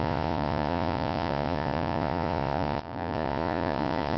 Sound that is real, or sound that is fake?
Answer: fake